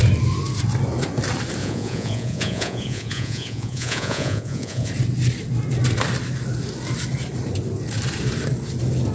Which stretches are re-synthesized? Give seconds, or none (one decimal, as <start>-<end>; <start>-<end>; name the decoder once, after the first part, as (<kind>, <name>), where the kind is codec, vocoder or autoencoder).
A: 1.6-4.9 (vocoder, Vocos)